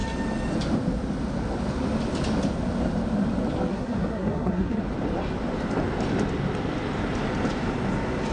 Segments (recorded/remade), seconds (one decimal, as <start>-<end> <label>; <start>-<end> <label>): 0.0-3.7 recorded; 3.7-4.8 remade; 4.8-8.3 recorded